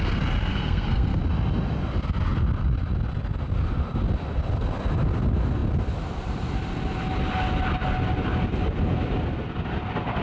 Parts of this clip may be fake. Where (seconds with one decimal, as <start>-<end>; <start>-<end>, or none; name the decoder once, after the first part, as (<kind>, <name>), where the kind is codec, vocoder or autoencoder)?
0.5-1.2 (codec, SNAC)